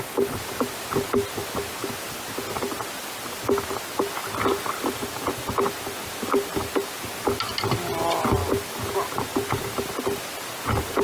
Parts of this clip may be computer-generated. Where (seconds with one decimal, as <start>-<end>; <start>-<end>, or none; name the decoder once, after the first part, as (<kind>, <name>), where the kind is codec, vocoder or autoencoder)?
4.2-6.7 (vocoder, BigVGAN v2); 8.4-10.2